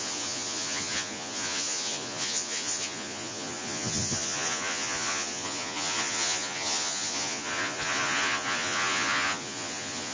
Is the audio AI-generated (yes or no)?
yes